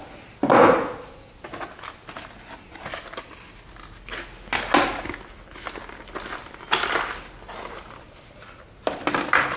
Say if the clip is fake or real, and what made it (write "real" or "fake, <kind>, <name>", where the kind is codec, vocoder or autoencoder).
real